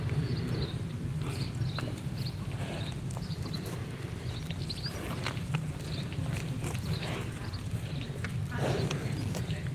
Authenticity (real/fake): fake